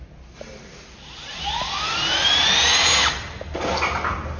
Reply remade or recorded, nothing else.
recorded